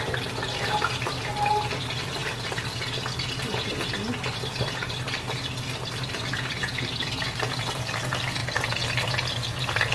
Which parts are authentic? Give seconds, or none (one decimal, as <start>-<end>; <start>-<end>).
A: 0.0-9.9